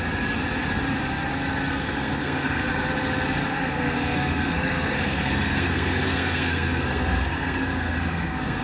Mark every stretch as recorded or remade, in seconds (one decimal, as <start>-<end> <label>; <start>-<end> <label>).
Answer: 0.0-1.7 recorded; 1.7-2.9 remade; 2.9-3.5 recorded; 3.5-8.6 remade